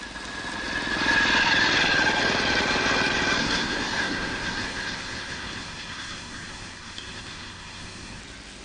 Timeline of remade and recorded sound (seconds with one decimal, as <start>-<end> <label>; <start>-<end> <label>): 0.0-3.4 recorded; 3.4-8.2 remade; 8.2-8.6 recorded